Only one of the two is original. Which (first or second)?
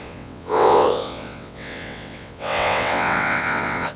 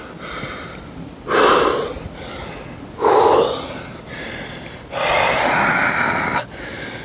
second